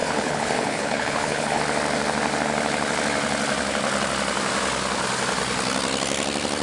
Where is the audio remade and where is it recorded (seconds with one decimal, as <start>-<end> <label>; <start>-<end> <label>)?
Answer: 0.0-1.6 remade; 1.6-6.6 recorded